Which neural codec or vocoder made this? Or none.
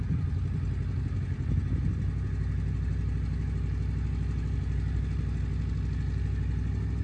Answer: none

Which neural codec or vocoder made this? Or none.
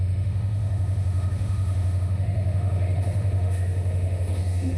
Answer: autoencoder, DAC-VAE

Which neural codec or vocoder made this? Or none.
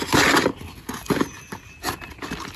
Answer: none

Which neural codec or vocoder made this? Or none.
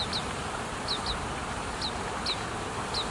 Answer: none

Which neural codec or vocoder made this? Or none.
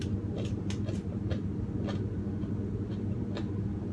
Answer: none